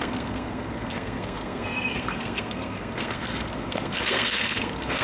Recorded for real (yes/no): no